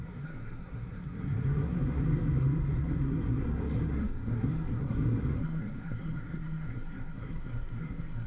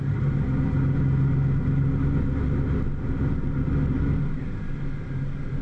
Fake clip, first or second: first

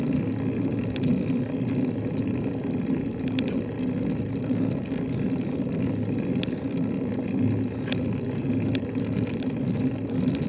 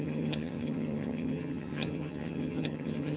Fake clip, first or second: second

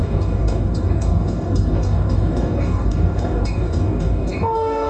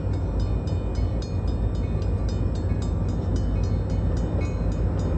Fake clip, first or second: first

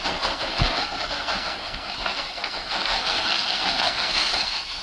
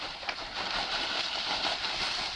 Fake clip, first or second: first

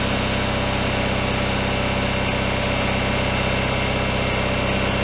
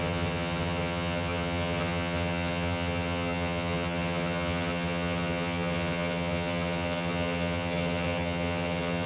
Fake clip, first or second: second